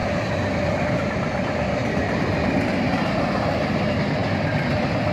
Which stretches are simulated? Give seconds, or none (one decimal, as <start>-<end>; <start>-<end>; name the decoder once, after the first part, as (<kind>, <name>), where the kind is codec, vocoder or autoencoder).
none